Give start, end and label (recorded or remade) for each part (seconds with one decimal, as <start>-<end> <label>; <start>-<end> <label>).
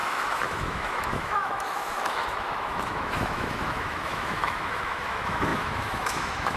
0.0-6.6 remade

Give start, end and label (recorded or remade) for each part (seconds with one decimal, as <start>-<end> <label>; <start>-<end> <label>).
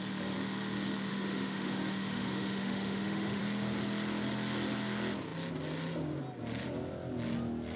0.0-1.1 recorded; 1.1-3.4 remade; 3.4-7.8 recorded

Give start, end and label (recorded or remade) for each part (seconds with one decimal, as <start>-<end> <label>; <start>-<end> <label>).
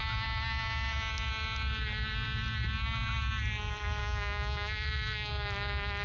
0.0-4.0 recorded; 4.0-5.3 remade; 5.3-6.0 recorded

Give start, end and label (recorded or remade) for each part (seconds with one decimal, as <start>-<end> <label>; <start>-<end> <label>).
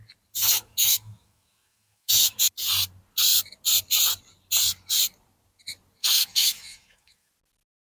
0.0-0.6 recorded; 0.6-2.5 remade; 2.5-6.0 recorded; 6.0-7.3 remade; 7.3-7.9 recorded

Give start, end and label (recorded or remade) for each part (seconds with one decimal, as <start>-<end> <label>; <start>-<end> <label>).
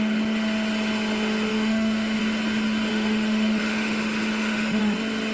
0.0-1.5 recorded; 1.5-2.2 remade; 2.2-2.9 recorded; 2.9-4.8 remade; 4.8-5.3 recorded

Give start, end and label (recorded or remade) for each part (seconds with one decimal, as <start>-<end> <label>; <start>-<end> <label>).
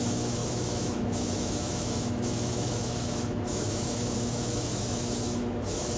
0.0-6.0 remade